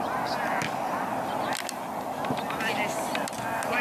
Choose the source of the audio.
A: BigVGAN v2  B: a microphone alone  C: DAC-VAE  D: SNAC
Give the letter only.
B